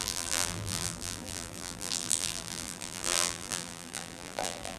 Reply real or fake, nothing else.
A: fake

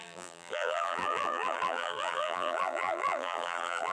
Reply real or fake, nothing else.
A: fake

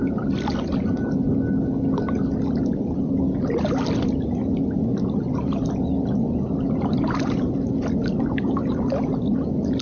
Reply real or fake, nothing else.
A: real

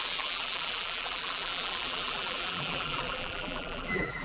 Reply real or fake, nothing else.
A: fake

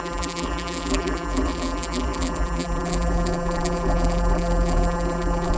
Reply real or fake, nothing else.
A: fake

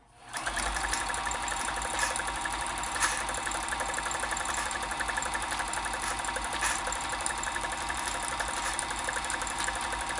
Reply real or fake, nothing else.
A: fake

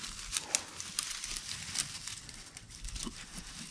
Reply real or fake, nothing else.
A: real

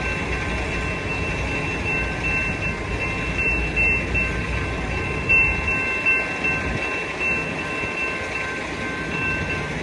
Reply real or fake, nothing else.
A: real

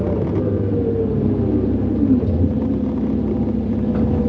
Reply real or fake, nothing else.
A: real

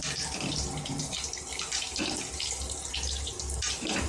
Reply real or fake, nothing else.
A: real